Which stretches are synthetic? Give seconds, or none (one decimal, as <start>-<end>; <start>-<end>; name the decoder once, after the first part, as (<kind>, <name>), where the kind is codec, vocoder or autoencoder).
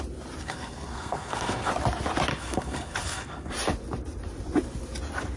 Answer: 0.4-1.7 (codec, SNAC); 2.3-3.5